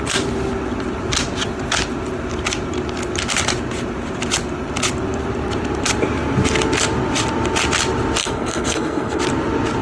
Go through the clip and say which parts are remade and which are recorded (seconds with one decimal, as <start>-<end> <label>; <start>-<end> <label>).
0.0-8.2 recorded; 8.2-9.2 remade; 9.2-9.8 recorded